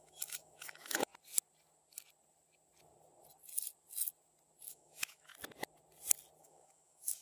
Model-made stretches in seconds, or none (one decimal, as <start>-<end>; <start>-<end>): 0.0-1.1; 4.7-5.3; 6.4-7.2

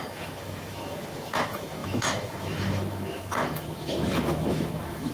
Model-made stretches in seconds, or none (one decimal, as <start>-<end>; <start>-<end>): 0.0-5.1